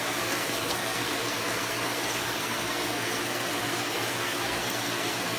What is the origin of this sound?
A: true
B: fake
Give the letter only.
B